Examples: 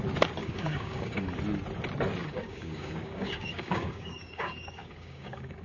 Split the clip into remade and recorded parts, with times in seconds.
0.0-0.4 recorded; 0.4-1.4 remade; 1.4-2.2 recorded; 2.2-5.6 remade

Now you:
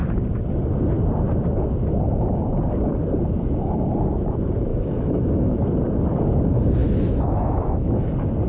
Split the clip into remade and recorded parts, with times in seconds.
0.0-4.7 recorded; 4.7-5.6 remade; 5.6-6.8 recorded; 6.8-8.1 remade; 8.1-8.5 recorded